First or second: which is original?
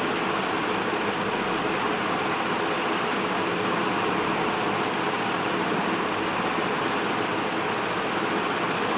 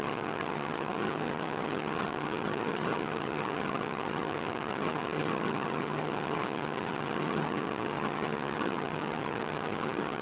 first